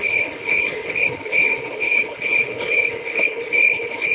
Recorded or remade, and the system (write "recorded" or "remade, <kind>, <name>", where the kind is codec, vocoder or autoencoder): remade, codec, HILCodec